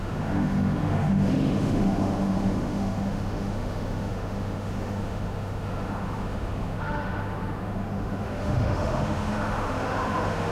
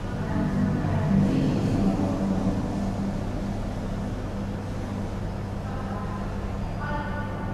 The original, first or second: second